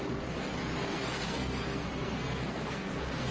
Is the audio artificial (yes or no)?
yes